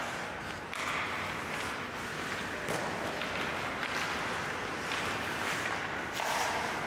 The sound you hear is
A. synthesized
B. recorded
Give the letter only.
B